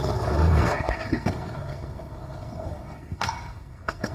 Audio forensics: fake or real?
fake